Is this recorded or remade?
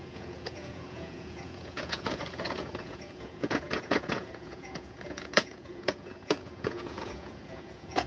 remade